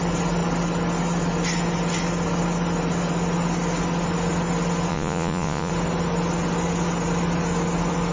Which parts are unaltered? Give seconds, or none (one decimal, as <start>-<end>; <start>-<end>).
0.0-4.9; 5.7-8.1